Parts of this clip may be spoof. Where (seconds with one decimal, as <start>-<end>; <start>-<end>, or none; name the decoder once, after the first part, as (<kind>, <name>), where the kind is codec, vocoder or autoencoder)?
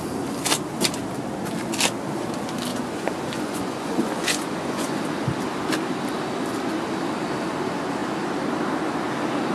2.7-5.0 (vocoder, Vocos)